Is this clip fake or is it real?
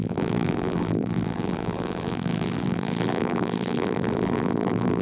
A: fake